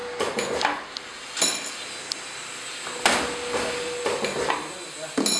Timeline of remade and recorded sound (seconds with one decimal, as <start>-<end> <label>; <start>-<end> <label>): 0.0-5.4 recorded